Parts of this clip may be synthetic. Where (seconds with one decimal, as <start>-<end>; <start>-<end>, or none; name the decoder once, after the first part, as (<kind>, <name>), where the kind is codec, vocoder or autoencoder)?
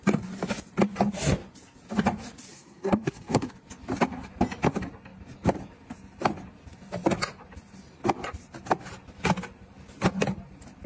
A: 2.5-3.5 (codec, SNAC)